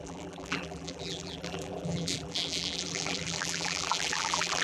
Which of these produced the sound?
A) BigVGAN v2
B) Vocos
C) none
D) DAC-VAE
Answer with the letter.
A